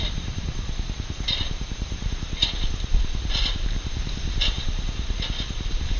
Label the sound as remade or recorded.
remade